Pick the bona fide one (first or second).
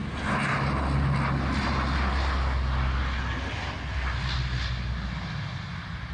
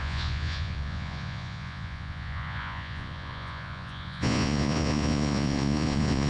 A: first